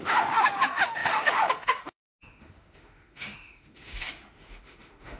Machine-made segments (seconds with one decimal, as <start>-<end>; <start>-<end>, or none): 0.0-5.2